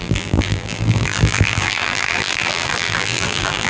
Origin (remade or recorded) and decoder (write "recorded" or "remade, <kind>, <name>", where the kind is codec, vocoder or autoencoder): remade, vocoder, BigVGAN v2